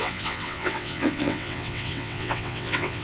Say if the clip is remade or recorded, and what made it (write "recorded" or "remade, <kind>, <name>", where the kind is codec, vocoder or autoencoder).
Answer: remade, vocoder, WaveNeXt